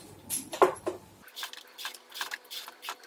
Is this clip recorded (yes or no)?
yes